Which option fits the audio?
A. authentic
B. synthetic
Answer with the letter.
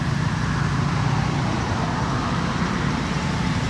B